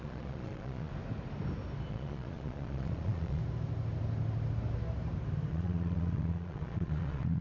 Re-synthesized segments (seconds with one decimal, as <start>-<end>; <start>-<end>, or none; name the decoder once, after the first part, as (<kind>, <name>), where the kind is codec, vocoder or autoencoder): 0.0-0.9 (vocoder, Vocos); 1.9-3.4; 5.5-7.4